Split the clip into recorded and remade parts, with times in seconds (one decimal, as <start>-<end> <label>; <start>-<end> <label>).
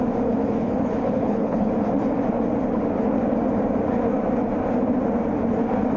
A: 0.0-0.4 recorded; 0.4-1.7 remade; 1.7-6.0 recorded